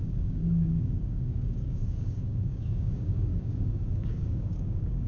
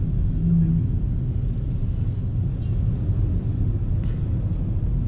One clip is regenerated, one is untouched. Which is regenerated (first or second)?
first